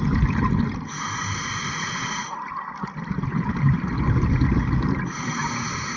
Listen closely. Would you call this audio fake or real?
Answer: real